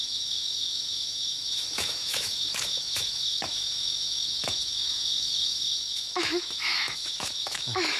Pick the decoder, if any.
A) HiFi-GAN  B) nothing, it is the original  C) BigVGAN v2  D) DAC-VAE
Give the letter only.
D